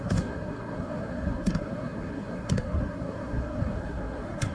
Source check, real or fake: fake